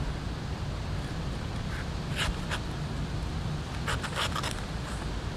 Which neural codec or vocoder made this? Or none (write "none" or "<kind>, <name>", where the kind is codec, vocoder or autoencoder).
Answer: none